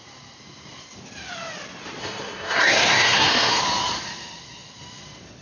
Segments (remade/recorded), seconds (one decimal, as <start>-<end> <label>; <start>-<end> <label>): 0.0-2.0 recorded; 2.0-3.6 remade; 3.6-5.4 recorded